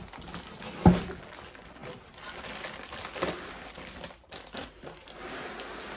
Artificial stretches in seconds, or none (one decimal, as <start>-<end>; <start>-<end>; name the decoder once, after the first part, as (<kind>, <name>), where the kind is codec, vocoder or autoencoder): none